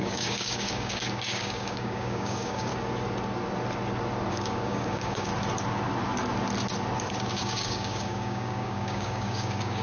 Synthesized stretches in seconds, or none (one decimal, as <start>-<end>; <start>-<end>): 0.0-2.7; 4.3-5.3; 7.4-9.8